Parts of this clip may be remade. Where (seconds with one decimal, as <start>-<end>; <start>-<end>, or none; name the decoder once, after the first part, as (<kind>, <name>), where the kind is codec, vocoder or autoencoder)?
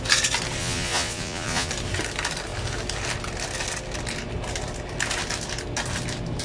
0.6-1.7 (vocoder, Vocos)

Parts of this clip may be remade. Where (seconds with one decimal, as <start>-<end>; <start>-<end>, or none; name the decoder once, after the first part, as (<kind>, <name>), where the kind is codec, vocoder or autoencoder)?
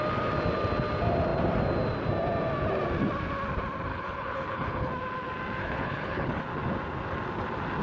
3.9-4.9 (codec, HILCodec); 5.6-6.4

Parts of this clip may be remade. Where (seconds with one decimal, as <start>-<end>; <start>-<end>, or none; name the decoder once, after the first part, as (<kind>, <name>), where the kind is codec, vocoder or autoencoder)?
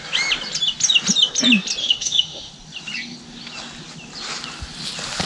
1.8-2.5 (autoencoder, DAC-VAE)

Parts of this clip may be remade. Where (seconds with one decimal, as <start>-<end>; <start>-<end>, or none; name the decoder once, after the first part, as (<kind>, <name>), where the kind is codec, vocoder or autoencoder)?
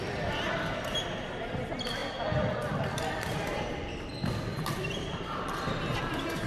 2.0-5.7 (vocoder, BigVGAN v2)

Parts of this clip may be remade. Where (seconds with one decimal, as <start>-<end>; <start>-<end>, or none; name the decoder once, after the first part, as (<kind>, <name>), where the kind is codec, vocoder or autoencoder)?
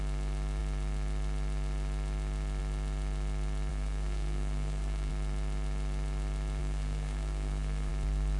3.7-5.1 (codec, SNAC); 6.6-7.9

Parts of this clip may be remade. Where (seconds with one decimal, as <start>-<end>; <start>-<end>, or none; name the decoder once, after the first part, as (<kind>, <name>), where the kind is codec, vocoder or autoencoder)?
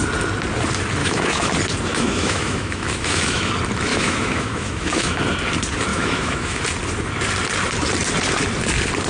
1.0-1.5 (autoencoder, DAC-VAE); 1.9-3.5; 3.9-5.2; 5.9-6.6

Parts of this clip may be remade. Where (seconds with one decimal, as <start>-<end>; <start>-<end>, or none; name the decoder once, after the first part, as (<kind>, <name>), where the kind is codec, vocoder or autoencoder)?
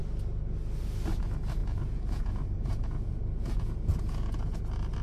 1.6-4.6 (vocoder, Vocos)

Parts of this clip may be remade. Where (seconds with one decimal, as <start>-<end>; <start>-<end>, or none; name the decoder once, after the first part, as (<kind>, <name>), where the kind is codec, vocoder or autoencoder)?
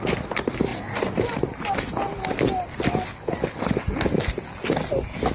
0.0-0.7 (vocoder, BigVGAN v2); 3.9-5.3